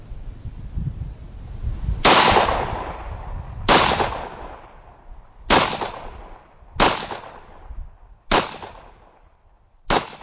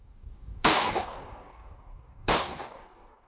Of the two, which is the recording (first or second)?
first